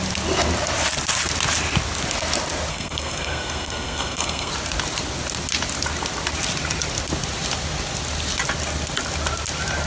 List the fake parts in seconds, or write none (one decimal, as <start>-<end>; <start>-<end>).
2.7-4.5